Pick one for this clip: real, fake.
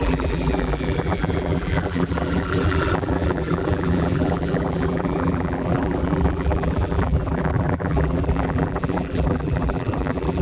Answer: fake